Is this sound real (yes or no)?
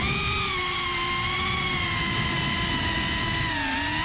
yes